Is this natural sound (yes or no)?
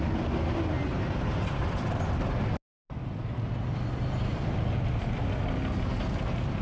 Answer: yes